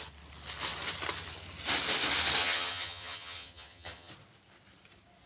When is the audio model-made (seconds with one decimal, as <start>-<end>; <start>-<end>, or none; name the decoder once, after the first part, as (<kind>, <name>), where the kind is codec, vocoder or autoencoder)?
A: 2.4-4.1 (vocoder, HiFi-GAN)